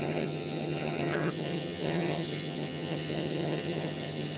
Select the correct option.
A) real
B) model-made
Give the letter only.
B